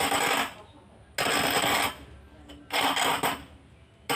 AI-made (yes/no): no